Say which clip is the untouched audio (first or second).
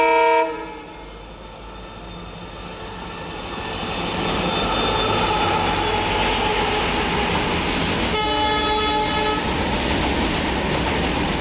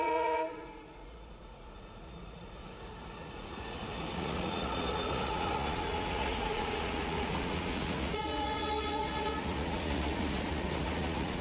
first